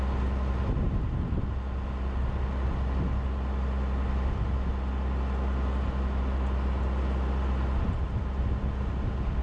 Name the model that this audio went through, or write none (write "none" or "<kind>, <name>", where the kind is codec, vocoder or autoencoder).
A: none